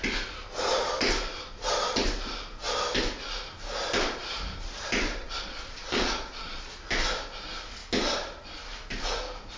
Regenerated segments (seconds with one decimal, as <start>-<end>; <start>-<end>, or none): 5.2-6.7